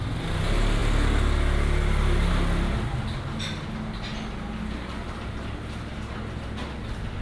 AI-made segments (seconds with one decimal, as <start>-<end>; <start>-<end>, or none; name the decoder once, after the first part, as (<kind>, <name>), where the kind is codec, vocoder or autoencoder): none